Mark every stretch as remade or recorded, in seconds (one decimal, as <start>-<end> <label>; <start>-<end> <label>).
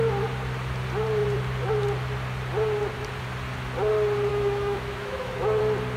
0.0-4.3 recorded; 4.3-5.6 remade; 5.6-6.0 recorded